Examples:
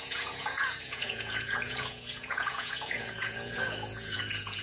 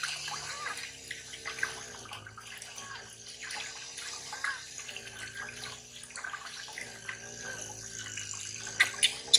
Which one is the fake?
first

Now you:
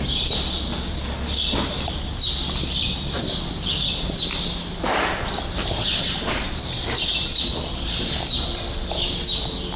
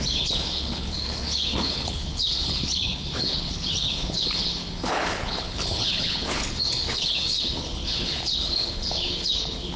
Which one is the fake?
second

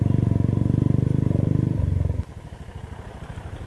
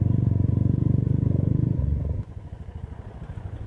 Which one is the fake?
second